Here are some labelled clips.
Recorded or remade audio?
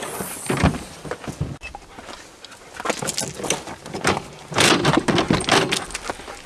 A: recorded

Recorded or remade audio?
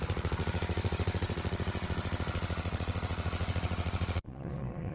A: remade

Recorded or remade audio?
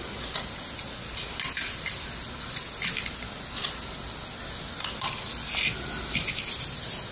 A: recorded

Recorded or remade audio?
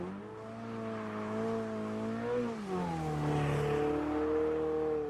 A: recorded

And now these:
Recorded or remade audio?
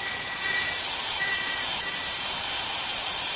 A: remade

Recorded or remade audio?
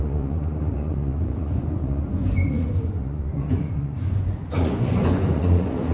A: remade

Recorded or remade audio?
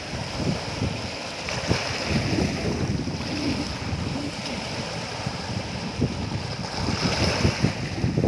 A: recorded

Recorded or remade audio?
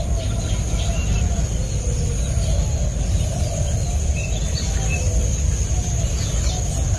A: recorded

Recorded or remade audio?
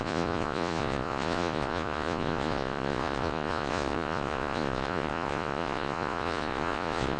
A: remade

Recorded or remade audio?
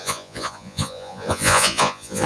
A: remade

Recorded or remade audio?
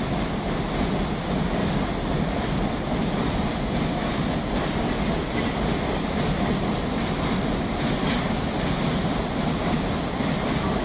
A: recorded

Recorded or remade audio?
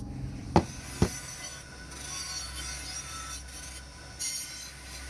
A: recorded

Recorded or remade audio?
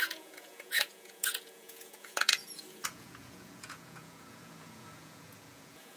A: remade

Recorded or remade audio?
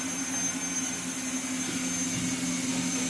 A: recorded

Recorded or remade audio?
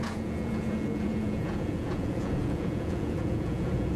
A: remade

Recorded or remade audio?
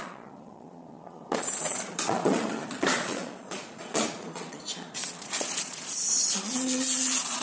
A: remade